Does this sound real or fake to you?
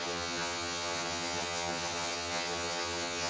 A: fake